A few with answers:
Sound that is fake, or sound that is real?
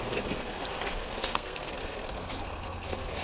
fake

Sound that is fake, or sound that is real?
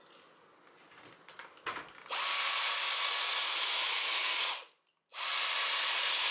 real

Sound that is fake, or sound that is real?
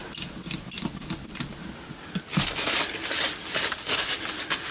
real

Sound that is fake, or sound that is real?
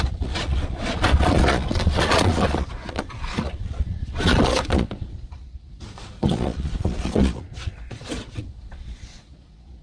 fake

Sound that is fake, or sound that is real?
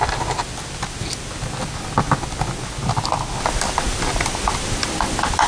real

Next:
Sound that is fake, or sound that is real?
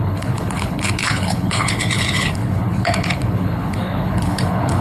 fake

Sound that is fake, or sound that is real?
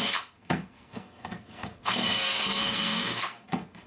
fake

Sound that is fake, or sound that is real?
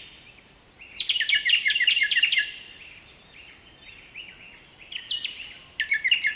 real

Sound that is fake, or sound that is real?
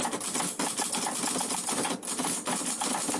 real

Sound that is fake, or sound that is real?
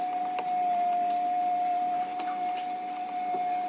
real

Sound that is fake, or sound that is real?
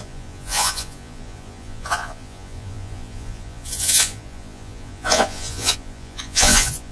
fake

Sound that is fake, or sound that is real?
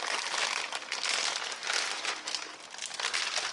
real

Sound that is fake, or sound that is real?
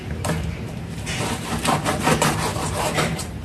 fake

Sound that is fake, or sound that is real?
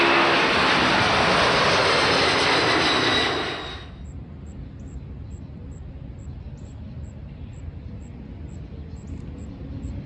real